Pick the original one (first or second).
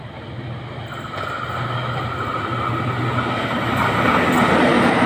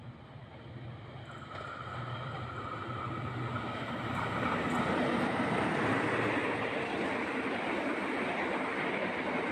first